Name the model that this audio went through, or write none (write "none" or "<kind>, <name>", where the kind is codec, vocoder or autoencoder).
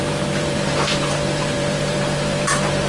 vocoder, BigVGAN v2